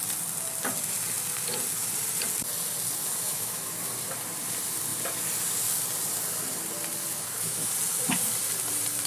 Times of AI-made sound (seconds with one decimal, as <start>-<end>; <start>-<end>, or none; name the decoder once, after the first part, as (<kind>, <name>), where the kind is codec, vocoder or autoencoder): 3.3-3.9 (autoencoder, DAC-VAE); 7.1-7.7

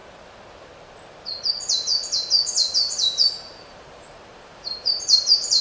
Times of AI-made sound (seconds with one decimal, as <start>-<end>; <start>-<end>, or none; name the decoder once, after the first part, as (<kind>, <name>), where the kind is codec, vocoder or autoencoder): 3.4-5.6 (vocoder, BigVGAN v2)

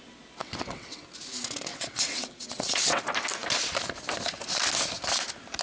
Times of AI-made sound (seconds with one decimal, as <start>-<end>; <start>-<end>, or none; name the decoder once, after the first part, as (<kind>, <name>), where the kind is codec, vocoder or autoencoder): 0.4-1.0 (vocoder, WaveNeXt); 1.7-3.0

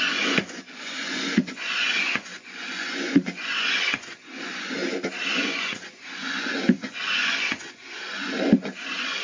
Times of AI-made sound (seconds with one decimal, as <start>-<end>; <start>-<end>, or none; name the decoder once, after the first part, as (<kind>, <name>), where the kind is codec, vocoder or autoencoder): 0.0-4.8 (vocoder, Vocos); 5.3-9.2